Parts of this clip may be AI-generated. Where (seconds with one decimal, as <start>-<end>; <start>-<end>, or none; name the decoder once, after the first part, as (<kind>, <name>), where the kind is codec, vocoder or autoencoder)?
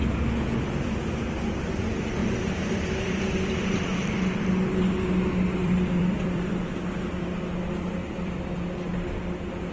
2.2-4.0 (vocoder, BigVGAN v2); 5.6-6.5; 8.0-8.5